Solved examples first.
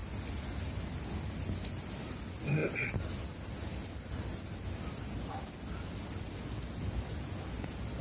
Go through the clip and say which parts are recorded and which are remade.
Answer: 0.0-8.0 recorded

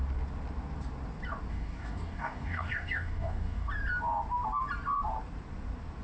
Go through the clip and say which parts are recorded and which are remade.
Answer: 0.0-1.5 recorded; 1.5-3.7 remade; 3.7-6.0 recorded

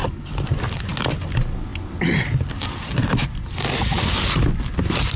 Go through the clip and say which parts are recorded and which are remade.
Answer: 0.0-5.2 recorded

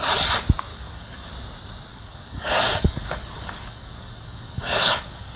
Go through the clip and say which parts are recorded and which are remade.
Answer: 0.0-0.7 recorded; 0.7-1.3 remade; 1.3-1.9 recorded; 1.9-5.4 remade

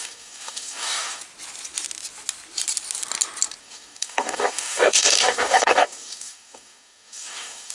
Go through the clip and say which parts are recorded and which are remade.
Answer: 0.0-1.2 remade; 1.2-3.6 recorded; 3.6-7.7 remade

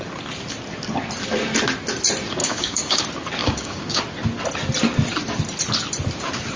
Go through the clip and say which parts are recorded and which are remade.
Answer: 0.0-2.4 recorded; 2.4-3.0 remade; 3.0-3.4 recorded; 3.4-4.0 remade; 4.0-6.6 recorded